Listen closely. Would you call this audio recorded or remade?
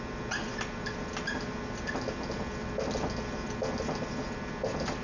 recorded